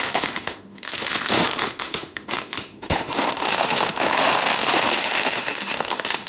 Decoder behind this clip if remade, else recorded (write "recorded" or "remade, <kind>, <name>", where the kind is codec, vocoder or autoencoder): remade, autoencoder, DAC-VAE